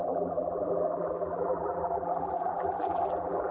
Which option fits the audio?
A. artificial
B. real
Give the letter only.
A